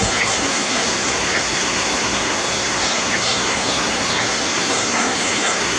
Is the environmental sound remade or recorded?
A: remade